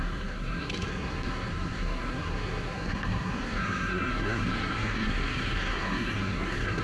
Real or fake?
fake